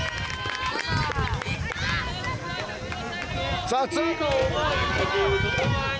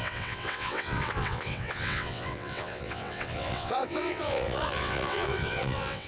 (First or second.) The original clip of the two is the first